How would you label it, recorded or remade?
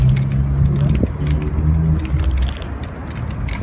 recorded